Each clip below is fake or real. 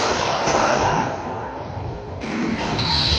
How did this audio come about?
fake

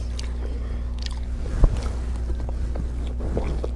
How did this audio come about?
real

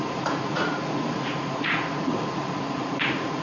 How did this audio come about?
fake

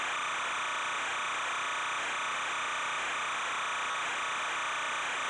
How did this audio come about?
real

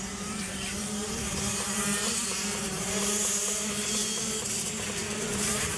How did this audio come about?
fake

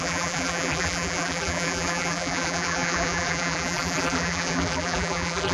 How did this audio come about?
fake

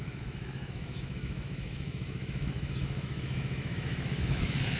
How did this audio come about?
fake